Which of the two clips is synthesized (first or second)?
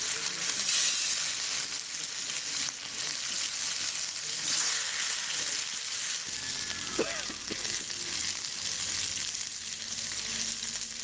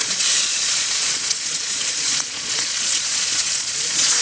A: second